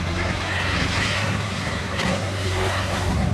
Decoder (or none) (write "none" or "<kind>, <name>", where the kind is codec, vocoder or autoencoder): codec, SNAC